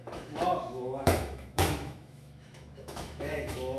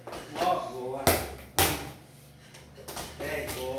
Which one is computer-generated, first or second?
first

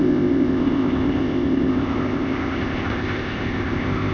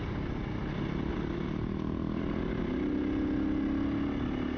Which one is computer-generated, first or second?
first